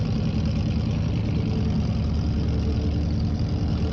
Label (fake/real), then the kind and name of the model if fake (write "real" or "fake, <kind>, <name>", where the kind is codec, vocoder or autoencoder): real